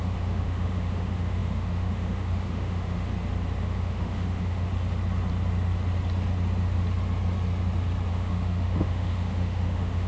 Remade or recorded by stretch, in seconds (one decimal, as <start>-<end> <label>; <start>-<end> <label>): 0.0-3.1 remade; 3.1-3.6 recorded; 3.6-4.7 remade; 4.7-8.1 recorded; 8.1-10.1 remade

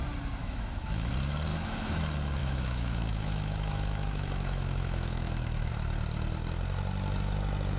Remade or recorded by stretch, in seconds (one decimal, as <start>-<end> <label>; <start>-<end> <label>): 0.0-0.4 recorded; 0.4-1.1 remade; 1.1-1.5 recorded; 1.5-2.0 remade; 2.0-2.4 recorded; 2.4-5.7 remade; 5.7-7.8 recorded

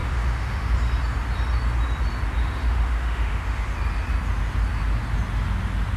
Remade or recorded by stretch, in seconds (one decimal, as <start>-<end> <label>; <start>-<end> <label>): 0.0-0.7 remade; 0.7-2.4 recorded; 2.4-3.7 remade; 3.7-6.0 recorded

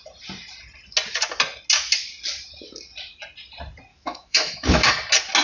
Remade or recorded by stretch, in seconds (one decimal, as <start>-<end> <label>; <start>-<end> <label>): 0.0-3.9 recorded; 3.9-4.9 remade; 4.9-5.4 recorded

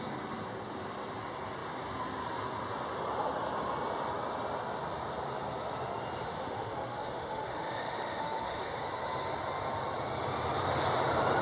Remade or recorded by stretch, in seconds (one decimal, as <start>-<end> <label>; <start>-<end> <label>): 0.0-6.2 recorded; 6.2-8.8 remade; 8.8-11.4 recorded

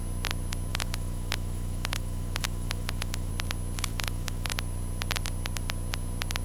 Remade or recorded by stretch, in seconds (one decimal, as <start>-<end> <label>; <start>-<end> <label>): 0.0-0.7 recorded; 0.7-3.3 remade; 3.3-3.9 recorded; 3.9-4.5 remade; 4.5-6.4 recorded

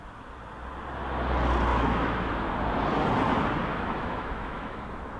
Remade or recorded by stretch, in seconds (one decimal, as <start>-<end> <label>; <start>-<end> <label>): 0.0-1.7 recorded; 1.7-2.3 remade; 2.3-3.7 recorded; 3.7-4.8 remade; 4.8-5.2 recorded

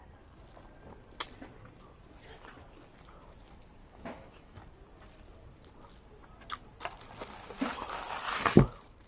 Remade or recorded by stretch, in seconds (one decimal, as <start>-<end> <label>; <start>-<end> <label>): 0.0-3.8 recorded; 3.8-4.6 remade; 4.6-9.1 recorded